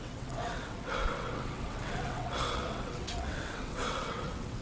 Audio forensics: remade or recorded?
remade